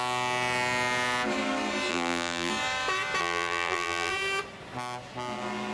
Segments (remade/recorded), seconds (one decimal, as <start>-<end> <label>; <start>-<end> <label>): 0.0-1.9 recorded; 1.9-2.5 remade; 2.5-3.2 recorded; 3.2-4.1 remade; 4.1-5.7 recorded